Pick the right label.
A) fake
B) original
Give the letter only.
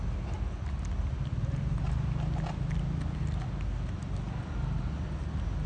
B